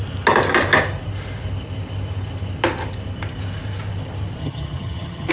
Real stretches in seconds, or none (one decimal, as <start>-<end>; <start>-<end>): 0.0-4.4

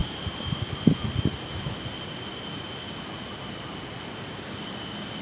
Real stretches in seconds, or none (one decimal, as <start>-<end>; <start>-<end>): 0.0-5.2

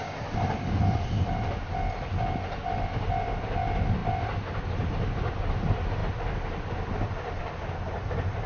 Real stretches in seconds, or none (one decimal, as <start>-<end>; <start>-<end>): 0.0-8.5

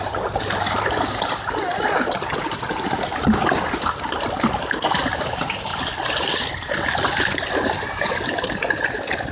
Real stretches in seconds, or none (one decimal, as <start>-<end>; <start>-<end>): 0.0-9.3

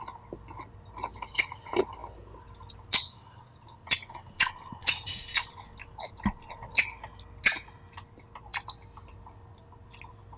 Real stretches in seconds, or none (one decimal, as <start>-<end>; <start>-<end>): 0.0-10.4

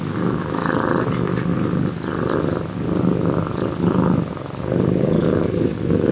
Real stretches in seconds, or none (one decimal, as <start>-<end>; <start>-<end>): 0.6-4.3

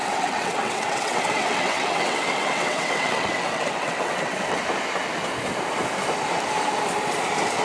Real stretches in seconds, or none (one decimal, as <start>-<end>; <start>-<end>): 4.6-7.6